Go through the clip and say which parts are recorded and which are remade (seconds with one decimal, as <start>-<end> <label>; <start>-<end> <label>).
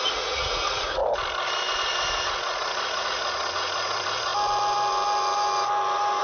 0.0-1.0 remade; 1.0-2.2 recorded; 2.2-4.3 remade; 4.3-6.2 recorded